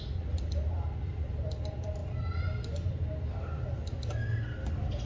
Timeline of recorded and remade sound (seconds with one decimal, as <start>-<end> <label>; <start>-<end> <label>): 0.0-5.1 recorded